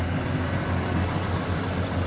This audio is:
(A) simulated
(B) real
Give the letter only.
B